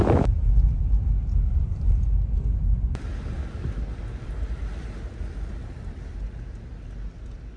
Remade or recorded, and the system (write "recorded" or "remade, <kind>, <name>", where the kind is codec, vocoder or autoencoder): recorded